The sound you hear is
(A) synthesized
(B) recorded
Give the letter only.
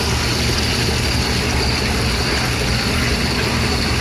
B